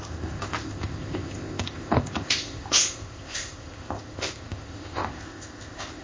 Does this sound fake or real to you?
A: fake